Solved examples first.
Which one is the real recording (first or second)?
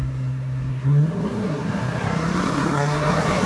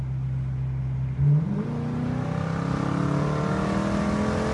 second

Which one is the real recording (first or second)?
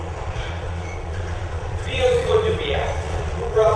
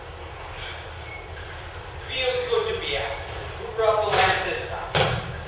second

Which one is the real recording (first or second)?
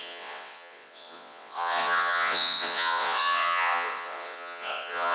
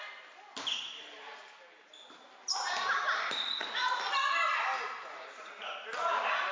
second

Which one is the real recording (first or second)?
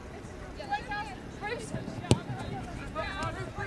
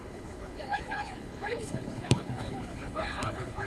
first